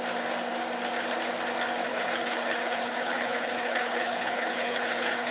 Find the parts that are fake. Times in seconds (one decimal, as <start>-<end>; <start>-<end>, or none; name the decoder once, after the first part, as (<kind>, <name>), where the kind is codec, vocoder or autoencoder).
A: 1.9-5.3 (codec, HILCodec)